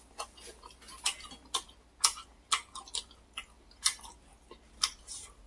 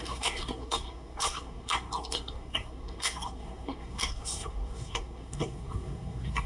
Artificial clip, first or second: second